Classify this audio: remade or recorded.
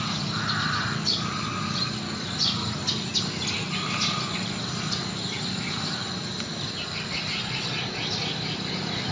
recorded